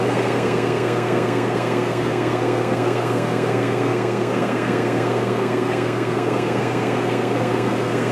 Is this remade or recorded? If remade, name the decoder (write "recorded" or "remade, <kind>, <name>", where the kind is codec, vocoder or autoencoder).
remade, codec, SNAC